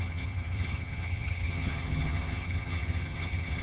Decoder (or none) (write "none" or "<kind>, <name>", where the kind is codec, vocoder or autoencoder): vocoder, HiFi-GAN